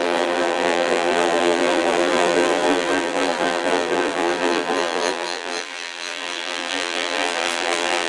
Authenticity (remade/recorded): remade